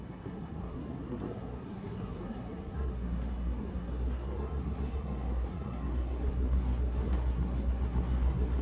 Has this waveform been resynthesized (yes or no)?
yes